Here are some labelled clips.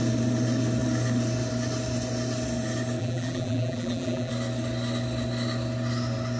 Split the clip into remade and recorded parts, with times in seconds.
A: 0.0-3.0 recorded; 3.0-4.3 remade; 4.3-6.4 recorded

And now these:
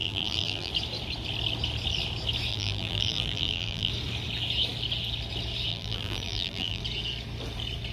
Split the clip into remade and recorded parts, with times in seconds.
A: 0.0-0.7 remade; 0.7-2.5 recorded; 2.5-3.9 remade; 3.9-5.7 recorded; 5.7-6.8 remade; 6.8-7.9 recorded

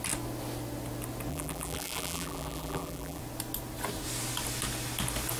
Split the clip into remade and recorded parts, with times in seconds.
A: 0.0-1.3 recorded; 1.3-3.2 remade; 3.2-5.4 recorded

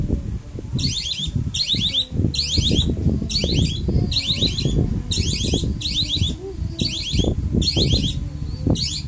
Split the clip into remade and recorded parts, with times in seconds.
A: 0.0-0.7 recorded; 0.7-1.7 remade; 1.7-9.1 recorded

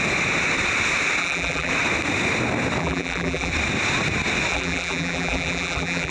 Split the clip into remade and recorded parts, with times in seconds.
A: 0.0-1.2 recorded; 1.2-1.7 remade; 1.7-2.8 recorded; 2.8-3.5 remade; 3.5-4.5 recorded; 4.5-6.1 remade

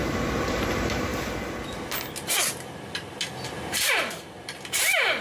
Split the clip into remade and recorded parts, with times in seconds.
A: 0.0-0.5 recorded; 0.5-1.1 remade; 1.1-3.5 recorded; 3.5-5.2 remade